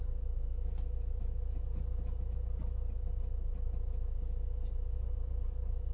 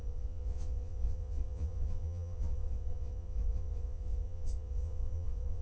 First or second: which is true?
first